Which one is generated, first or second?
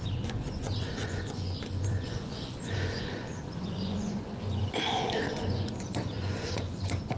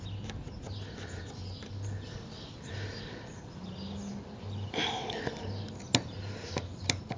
first